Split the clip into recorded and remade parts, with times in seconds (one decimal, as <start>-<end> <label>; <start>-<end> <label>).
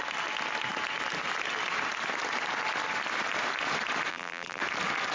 0.0-4.1 recorded; 4.1-4.6 remade; 4.6-5.1 recorded